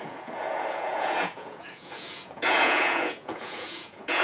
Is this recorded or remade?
remade